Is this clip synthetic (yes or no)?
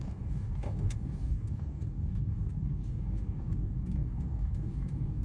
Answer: yes